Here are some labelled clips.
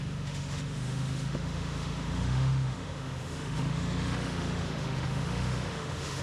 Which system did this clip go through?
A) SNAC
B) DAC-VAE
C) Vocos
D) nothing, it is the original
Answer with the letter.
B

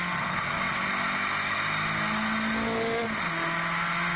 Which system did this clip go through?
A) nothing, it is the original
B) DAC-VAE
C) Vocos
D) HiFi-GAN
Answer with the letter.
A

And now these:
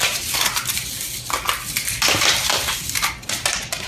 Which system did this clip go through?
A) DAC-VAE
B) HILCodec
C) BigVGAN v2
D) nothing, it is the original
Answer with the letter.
D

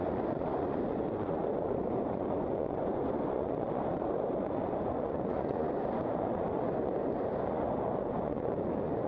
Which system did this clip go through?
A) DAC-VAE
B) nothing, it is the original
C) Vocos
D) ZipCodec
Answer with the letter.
C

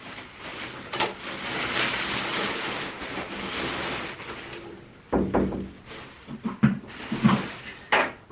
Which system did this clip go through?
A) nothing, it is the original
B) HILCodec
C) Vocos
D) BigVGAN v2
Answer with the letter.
A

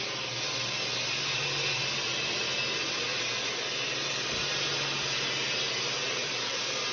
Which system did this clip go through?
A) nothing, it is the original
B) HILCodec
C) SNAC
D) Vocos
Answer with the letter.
A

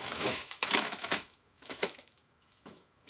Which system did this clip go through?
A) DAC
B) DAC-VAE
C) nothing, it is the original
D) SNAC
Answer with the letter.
B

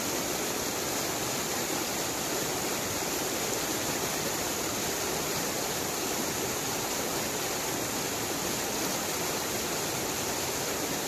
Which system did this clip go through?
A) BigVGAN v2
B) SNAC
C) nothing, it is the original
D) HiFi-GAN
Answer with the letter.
A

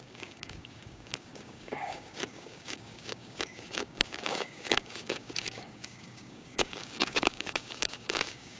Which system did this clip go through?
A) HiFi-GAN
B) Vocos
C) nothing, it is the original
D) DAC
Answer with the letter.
D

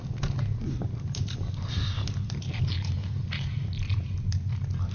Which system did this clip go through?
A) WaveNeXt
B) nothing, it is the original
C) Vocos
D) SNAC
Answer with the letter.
B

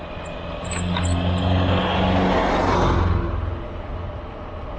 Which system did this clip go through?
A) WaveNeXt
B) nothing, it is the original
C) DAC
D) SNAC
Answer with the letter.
B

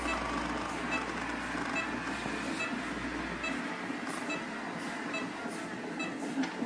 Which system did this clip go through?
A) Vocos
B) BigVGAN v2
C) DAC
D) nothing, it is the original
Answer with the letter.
D